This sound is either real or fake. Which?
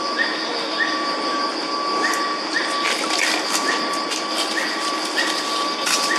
real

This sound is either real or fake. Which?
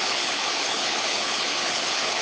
fake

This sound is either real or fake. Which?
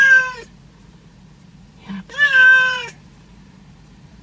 fake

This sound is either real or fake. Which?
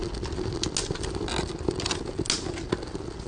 real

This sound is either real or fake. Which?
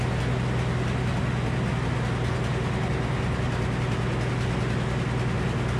real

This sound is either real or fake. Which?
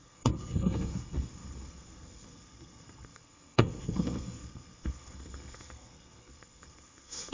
fake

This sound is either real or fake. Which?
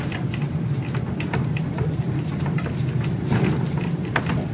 real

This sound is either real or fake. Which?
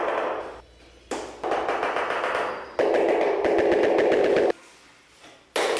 real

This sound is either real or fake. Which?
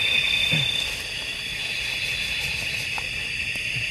real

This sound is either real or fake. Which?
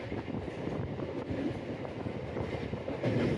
real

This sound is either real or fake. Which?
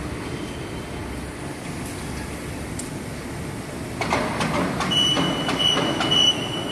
real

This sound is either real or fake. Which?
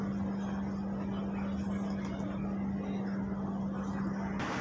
real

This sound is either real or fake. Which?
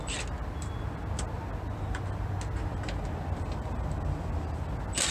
real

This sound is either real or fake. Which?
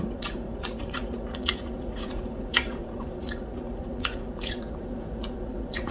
fake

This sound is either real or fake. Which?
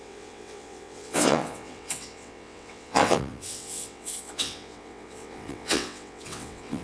fake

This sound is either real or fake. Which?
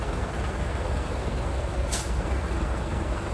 fake